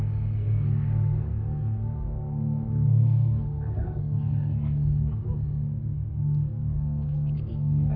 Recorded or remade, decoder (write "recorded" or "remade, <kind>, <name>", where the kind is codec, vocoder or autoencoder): remade, codec, SNAC